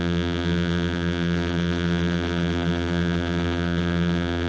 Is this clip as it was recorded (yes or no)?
no